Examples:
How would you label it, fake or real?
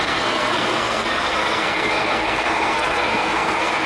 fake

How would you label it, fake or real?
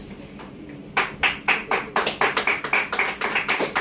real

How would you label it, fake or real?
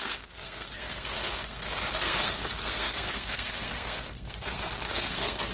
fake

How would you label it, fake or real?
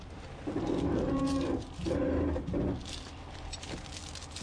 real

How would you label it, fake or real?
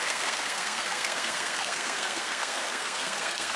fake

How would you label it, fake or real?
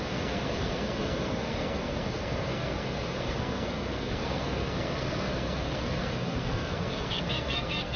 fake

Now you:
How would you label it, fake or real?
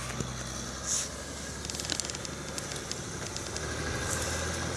real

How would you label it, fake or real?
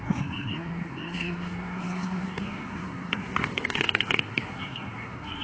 fake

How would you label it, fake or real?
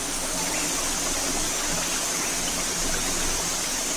real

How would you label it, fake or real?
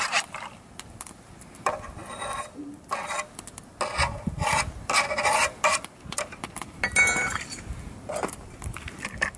real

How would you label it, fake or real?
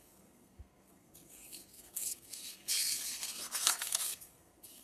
fake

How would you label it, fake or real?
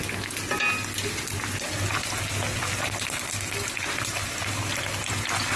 real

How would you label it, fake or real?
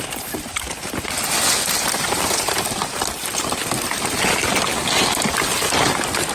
real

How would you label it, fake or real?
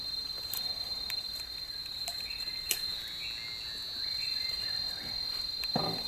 real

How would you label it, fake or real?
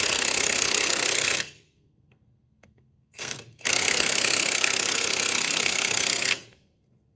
fake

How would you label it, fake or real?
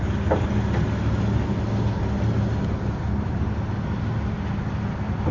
real